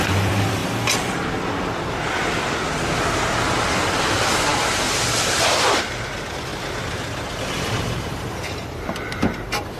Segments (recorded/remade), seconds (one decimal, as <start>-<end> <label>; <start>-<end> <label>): 0.0-0.6 remade; 0.6-3.7 recorded; 3.7-9.8 remade